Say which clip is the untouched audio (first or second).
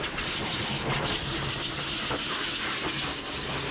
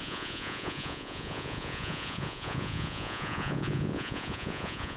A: first